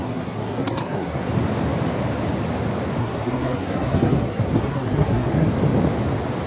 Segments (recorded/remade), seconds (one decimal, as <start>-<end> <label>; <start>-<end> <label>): 0.0-1.3 remade; 1.3-3.0 recorded; 3.0-5.5 remade; 5.5-6.5 recorded